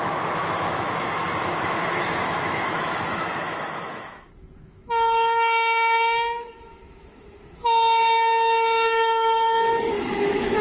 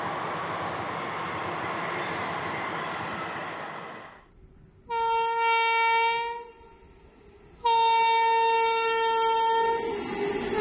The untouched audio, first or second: second